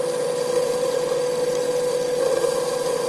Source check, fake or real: real